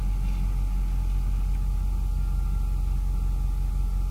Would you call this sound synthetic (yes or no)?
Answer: no